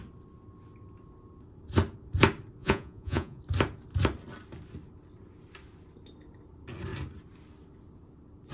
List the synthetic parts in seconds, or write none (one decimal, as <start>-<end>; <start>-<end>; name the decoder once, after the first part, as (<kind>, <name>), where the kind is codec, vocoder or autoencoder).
2.6-3.4 (vocoder, Vocos)